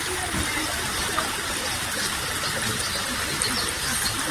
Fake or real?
fake